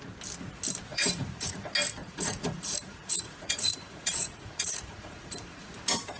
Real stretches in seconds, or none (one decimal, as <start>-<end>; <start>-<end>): 0.0-0.9; 1.6-2.0; 5.7-6.2

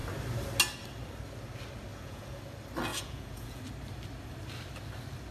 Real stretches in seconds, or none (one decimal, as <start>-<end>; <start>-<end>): 0.0-1.9; 2.4-2.9; 3.6-5.3

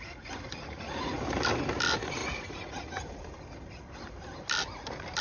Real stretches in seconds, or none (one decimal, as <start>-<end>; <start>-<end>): 0.0-0.5; 1.2-2.2; 3.2-5.2

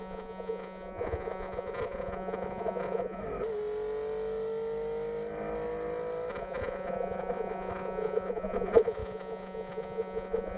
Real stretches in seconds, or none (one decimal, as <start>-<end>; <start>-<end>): 3.2-6.3

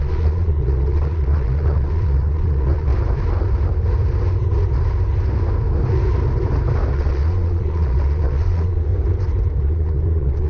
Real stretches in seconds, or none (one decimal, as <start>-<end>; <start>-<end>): 2.9-6.9; 8.9-9.6

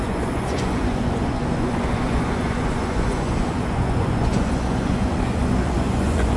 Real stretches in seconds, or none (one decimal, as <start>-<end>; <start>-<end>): none

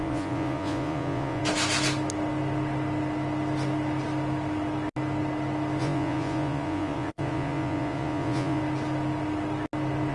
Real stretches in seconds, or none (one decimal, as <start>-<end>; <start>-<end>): 1.4-5.8; 8.6-10.1

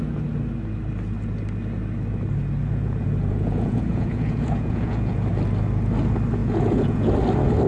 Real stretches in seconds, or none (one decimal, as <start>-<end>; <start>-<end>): 0.0-2.6; 5.3-6.4; 7.1-7.7